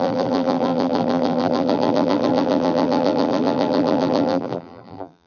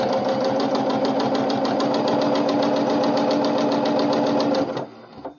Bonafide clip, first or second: second